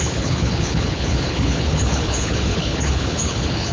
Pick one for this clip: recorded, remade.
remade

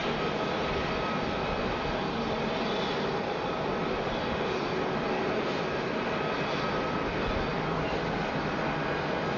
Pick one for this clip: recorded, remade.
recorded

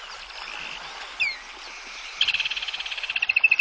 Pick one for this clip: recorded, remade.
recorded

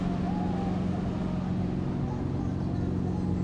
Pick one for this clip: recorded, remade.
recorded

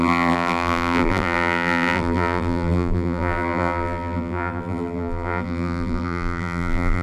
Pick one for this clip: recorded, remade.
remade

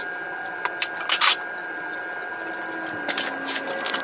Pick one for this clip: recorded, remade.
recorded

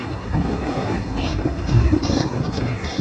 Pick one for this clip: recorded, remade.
remade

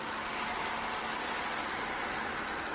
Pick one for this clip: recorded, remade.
recorded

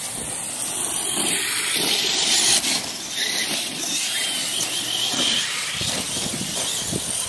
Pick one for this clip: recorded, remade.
recorded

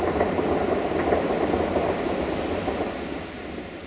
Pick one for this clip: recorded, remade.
recorded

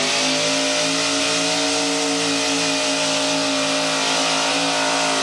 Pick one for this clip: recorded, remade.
recorded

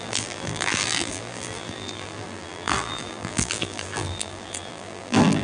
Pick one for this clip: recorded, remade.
remade